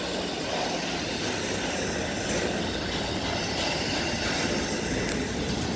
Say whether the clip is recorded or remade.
recorded